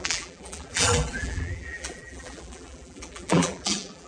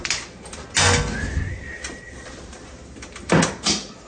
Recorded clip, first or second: second